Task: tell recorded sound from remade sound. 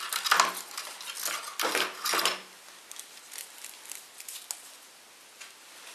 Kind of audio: recorded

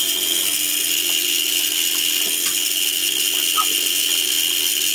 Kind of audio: recorded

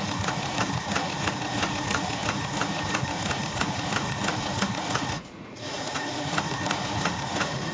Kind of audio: remade